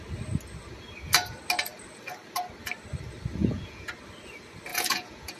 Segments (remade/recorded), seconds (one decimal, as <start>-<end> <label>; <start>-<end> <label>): 0.0-3.4 recorded; 3.4-3.9 remade; 3.9-4.7 recorded; 4.7-5.4 remade